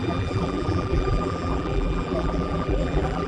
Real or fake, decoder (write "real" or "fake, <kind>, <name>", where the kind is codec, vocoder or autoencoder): fake, vocoder, BigVGAN v2